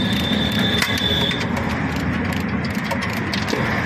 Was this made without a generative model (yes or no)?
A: yes